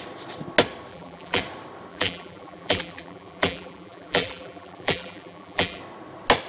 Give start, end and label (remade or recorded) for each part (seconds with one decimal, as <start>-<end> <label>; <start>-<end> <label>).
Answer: 0.0-0.9 recorded; 0.9-1.4 remade; 1.4-1.9 recorded; 1.9-5.8 remade; 5.8-6.5 recorded